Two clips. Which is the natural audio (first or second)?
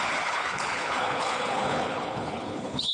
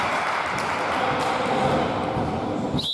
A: second